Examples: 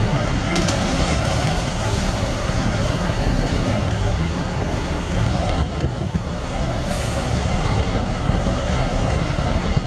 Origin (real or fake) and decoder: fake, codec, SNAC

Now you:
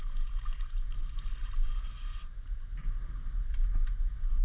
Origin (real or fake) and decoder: real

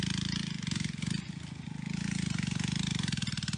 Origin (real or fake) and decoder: real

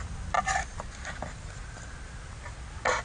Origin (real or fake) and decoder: real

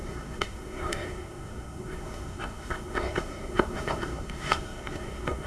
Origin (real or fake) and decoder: fake, codec, SNAC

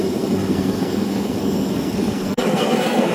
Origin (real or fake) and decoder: fake, codec, SNAC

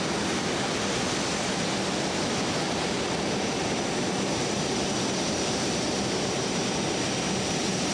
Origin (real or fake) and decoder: real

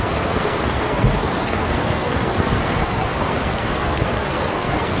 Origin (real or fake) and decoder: fake, codec, SNAC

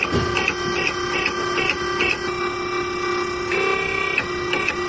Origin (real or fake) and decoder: real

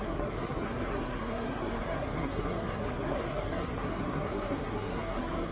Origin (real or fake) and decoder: fake, codec, SNAC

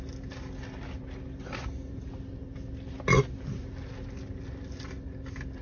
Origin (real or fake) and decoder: real